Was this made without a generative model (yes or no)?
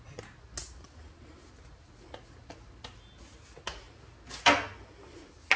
yes